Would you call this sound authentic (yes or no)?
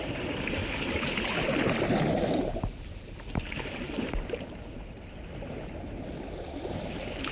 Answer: yes